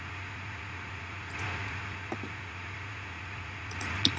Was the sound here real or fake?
fake